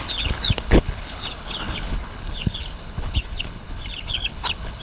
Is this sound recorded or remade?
remade